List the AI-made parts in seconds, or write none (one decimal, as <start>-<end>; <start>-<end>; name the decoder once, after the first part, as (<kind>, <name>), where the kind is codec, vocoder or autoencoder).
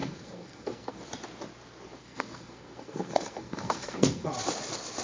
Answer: 0.0-1.0 (codec, SNAC); 2.0-4.3